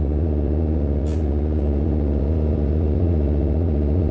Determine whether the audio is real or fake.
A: fake